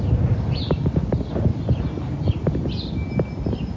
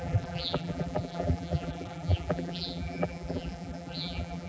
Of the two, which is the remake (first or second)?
second